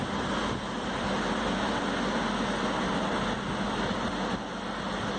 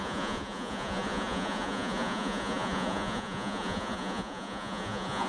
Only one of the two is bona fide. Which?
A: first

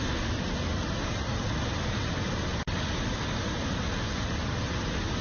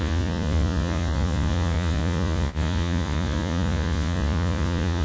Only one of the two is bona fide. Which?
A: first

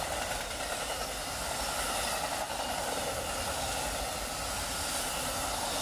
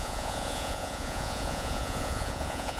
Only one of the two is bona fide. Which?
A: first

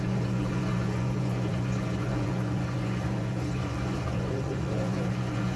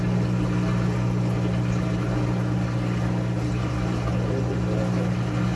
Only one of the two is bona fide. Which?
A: second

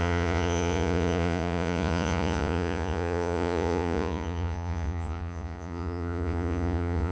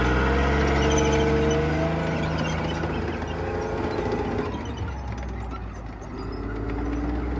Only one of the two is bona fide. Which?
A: second